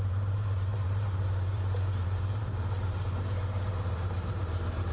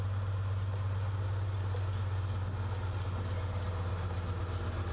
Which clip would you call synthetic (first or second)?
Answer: first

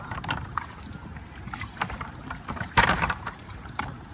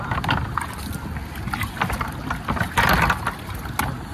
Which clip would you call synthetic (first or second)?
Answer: first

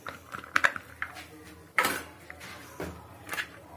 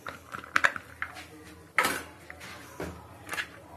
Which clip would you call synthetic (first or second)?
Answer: first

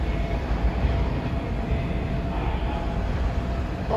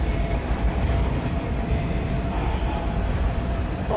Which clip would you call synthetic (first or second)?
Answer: second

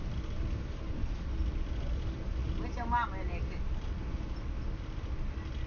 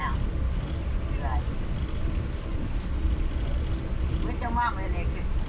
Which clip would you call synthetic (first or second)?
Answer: second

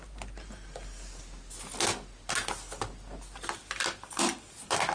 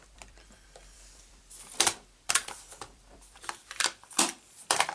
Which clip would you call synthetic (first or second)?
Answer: second